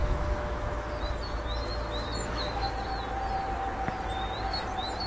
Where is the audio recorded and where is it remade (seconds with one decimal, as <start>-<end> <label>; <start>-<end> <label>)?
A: 0.0-1.0 remade; 1.0-2.2 recorded; 2.2-2.7 remade; 2.7-5.1 recorded